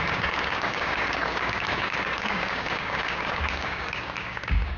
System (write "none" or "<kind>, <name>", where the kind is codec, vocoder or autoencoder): codec, DAC